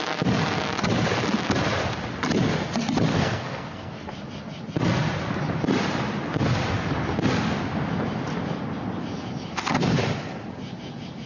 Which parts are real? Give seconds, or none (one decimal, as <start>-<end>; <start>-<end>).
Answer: 0.0-3.1; 4.1-11.3